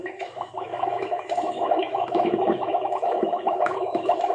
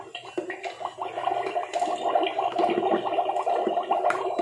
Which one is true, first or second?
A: second